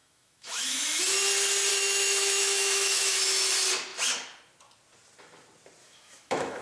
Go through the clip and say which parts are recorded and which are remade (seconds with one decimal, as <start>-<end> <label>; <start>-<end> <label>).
0.0-1.0 remade; 1.0-1.7 recorded; 1.7-3.5 remade; 3.5-5.8 recorded; 5.8-6.6 remade